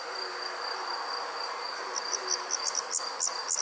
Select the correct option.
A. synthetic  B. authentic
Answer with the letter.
B